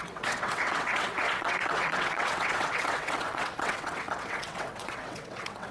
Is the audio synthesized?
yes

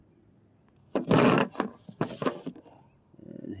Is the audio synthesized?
no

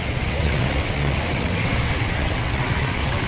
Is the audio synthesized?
yes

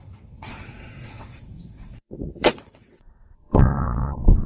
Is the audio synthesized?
yes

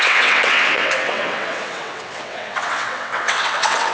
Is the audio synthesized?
yes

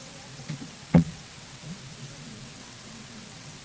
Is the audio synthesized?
yes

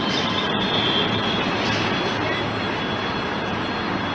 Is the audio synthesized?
no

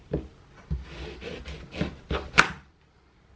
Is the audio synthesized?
no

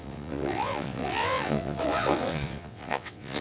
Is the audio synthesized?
yes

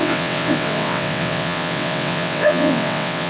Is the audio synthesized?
yes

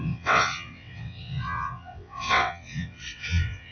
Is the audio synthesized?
yes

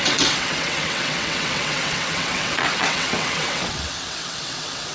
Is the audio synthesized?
yes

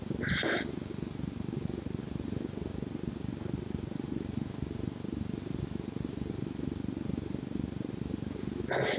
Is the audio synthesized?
no